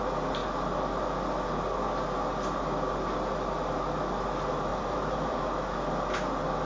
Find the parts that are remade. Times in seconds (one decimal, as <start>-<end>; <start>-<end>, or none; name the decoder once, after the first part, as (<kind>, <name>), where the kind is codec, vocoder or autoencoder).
4.7-5.4 (vocoder, BigVGAN v2)